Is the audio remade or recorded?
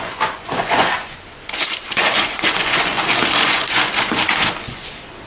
remade